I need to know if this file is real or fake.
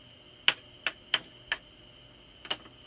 real